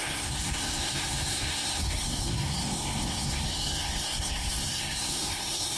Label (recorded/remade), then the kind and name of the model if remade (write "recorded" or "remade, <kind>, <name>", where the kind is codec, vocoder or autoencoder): remade, codec, SNAC